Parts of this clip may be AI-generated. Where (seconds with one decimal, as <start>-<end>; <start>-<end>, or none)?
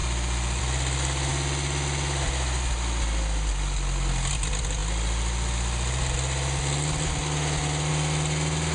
none